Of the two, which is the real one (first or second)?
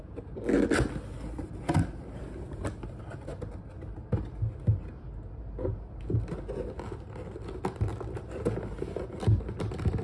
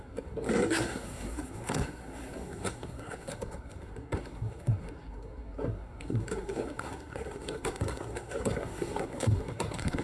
first